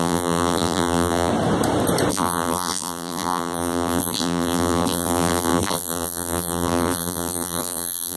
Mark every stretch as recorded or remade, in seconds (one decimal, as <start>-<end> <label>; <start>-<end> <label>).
0.0-1.3 remade; 1.3-2.1 recorded; 2.1-8.2 remade